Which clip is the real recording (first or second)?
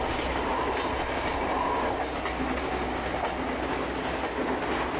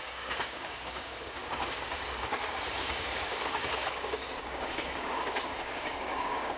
first